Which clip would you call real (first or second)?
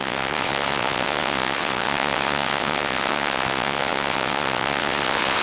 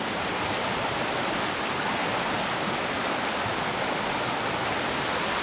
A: second